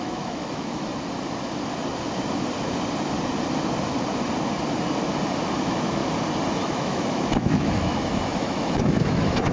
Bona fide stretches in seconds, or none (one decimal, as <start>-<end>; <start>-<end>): 0.9-5.6; 6.0-6.6